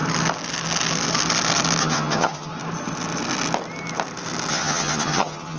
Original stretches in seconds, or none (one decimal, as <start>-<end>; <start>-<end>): 0.0-1.8; 2.5-4.5